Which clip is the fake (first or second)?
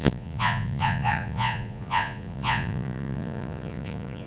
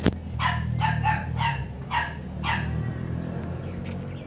first